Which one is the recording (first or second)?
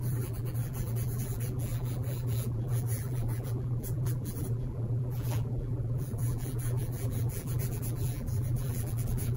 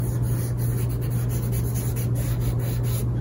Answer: second